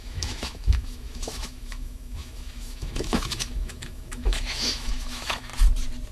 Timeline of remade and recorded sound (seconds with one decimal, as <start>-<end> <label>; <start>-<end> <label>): 0.0-5.5 remade; 5.5-6.1 recorded